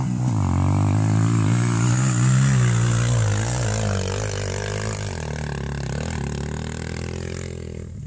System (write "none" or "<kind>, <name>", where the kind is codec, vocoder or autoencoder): none